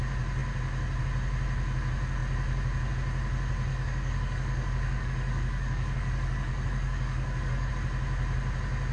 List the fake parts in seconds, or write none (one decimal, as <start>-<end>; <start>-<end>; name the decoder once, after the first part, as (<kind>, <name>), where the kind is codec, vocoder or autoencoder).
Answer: 3.7-7.7 (codec, DAC)